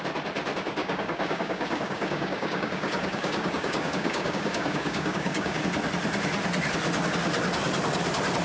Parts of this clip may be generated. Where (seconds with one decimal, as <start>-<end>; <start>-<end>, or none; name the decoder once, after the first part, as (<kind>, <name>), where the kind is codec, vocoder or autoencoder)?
0.8-5.6 (codec, DAC)